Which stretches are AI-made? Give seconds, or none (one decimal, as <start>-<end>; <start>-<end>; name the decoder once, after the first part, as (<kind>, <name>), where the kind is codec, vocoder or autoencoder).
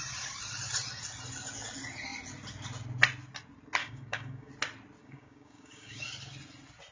3.8-4.5 (codec, DAC); 5.0-6.1